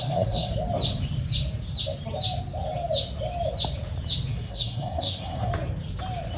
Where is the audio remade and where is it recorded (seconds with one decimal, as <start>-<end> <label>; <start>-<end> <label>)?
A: 0.0-0.5 remade; 0.5-4.3 recorded; 4.3-5.5 remade; 5.5-6.4 recorded